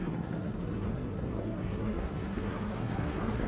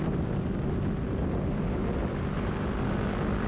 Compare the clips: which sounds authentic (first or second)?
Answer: second